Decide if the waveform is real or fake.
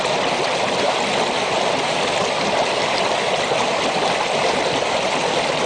real